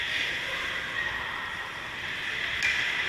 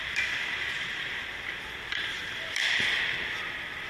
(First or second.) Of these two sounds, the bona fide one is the first